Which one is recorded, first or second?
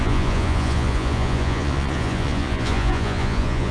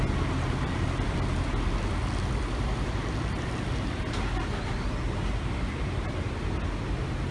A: second